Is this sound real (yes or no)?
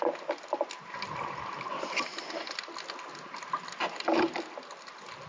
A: yes